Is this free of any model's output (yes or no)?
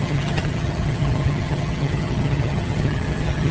no